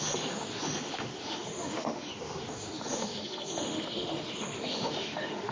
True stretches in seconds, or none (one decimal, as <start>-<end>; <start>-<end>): none